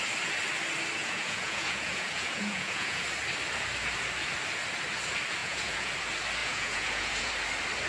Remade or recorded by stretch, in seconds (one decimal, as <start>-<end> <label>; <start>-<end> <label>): 0.0-1.0 recorded; 1.0-3.0 remade; 3.0-5.4 recorded; 5.4-5.9 remade; 5.9-6.4 recorded; 6.4-7.3 remade; 7.3-7.9 recorded